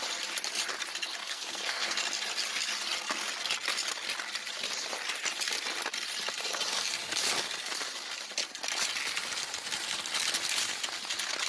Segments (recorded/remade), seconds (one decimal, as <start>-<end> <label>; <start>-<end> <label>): 0.0-1.2 recorded; 1.2-2.0 remade; 2.0-11.5 recorded